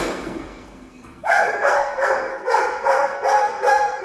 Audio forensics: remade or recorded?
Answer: remade